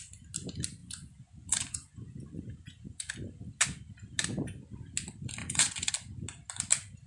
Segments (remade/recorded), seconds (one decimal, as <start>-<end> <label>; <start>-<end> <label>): 0.0-0.8 recorded; 0.8-3.1 remade; 3.1-5.4 recorded; 5.4-5.9 remade; 5.9-7.1 recorded